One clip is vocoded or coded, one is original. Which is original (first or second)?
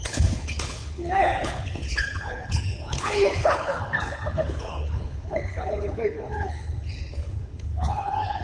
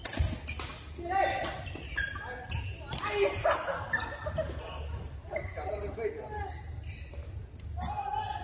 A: second